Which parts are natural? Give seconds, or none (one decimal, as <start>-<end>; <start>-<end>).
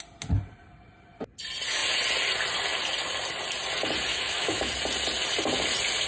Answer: 0.0-4.1; 4.7-6.1